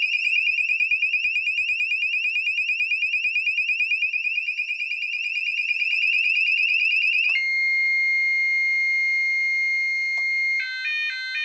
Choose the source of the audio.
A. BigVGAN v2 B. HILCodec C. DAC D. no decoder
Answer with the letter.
D